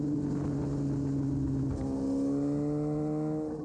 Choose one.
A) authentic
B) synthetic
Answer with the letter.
A